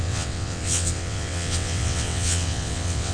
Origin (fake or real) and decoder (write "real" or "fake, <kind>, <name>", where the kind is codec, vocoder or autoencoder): fake, vocoder, WaveNeXt